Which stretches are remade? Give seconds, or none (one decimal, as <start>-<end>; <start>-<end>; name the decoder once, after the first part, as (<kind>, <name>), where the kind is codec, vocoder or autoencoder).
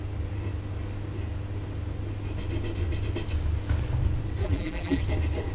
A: 4.4-5.0 (vocoder, BigVGAN v2)